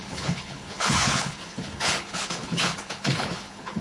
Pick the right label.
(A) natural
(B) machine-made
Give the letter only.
B